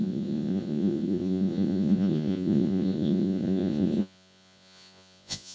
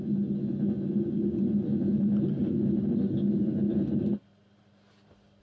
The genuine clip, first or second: second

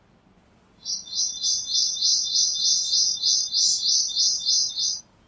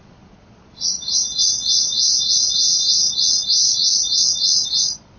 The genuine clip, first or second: first